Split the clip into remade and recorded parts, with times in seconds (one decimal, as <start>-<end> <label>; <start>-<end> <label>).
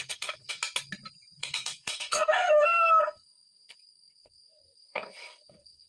0.0-0.6 remade; 0.6-1.4 recorded; 1.4-5.9 remade